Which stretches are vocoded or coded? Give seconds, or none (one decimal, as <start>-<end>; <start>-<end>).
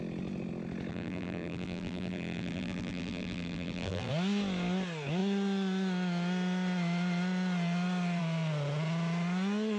0.9-4.1